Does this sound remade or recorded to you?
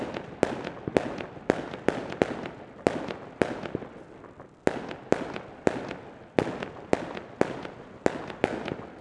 recorded